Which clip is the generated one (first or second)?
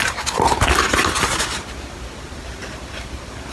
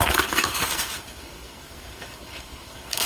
second